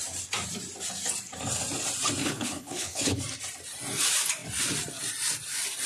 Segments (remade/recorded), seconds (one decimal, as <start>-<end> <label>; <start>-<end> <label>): 0.0-2.2 recorded; 2.2-3.2 remade; 3.2-5.9 recorded